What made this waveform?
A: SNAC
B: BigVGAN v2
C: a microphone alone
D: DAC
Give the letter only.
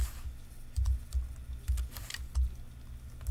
C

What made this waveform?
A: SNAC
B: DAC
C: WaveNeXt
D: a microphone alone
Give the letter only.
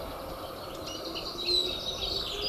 D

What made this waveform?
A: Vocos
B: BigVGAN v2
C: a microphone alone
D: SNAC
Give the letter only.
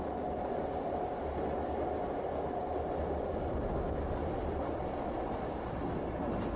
C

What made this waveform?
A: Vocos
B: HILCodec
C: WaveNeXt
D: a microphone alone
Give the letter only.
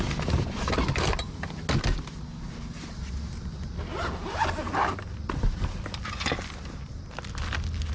D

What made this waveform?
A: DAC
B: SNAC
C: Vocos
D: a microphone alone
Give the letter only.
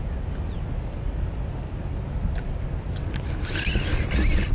D